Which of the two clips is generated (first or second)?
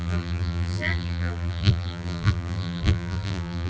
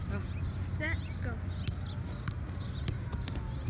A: first